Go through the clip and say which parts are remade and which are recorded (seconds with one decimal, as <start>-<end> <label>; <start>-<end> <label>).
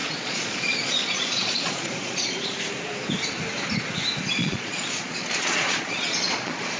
0.0-2.6 remade; 2.6-4.4 recorded; 4.4-6.8 remade